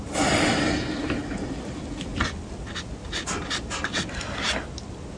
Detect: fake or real real